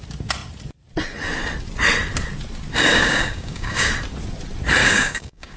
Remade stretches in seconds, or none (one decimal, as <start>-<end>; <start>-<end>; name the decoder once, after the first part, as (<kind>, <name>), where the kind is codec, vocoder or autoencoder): 2.9-3.9 (codec, DAC); 4.8-5.6